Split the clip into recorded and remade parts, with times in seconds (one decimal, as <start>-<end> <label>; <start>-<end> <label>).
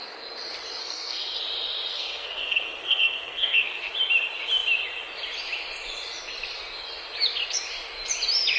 0.0-0.8 recorded; 0.8-1.4 remade; 1.4-1.9 recorded; 1.9-3.9 remade; 3.9-8.6 recorded